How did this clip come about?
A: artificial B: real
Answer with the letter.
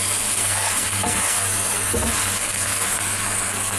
A